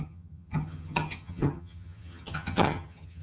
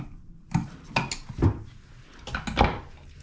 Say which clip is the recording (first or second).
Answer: second